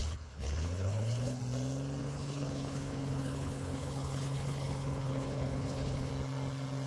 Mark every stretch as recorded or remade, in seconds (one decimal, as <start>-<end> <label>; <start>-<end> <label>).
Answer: 0.0-1.4 remade; 1.4-2.0 recorded; 2.0-6.1 remade; 6.1-6.9 recorded